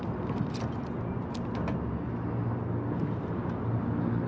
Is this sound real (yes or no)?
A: yes